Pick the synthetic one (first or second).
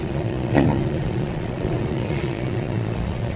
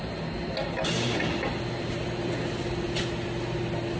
first